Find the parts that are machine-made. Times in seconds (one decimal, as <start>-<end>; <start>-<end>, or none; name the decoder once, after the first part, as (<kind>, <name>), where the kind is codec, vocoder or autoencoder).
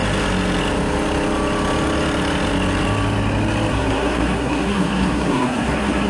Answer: 3.7-6.1 (codec, SNAC)